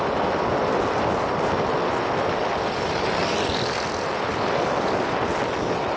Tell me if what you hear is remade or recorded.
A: recorded